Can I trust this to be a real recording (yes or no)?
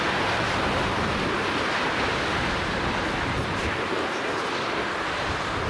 yes